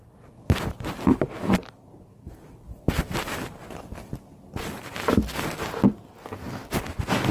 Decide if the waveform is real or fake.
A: real